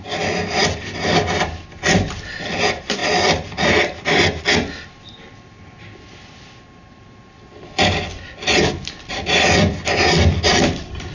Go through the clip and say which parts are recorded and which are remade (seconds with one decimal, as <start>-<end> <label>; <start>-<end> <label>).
0.0-11.1 recorded